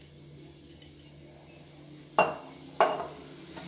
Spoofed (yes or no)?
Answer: no